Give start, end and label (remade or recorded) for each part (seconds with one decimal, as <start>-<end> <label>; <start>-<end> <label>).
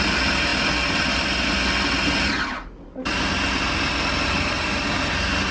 0.0-5.5 recorded